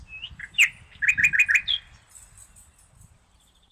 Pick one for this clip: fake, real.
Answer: real